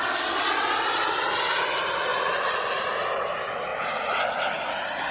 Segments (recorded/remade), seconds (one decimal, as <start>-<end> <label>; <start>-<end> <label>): 0.0-5.1 recorded